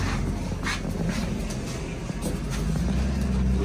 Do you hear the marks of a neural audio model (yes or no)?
no